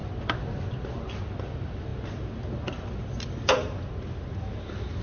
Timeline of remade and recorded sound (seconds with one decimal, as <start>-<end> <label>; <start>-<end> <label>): 0.0-5.0 recorded